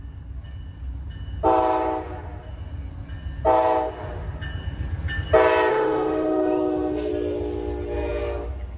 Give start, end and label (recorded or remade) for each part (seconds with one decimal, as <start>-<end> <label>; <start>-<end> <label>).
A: 0.0-5.7 recorded; 5.7-7.1 remade; 7.1-8.8 recorded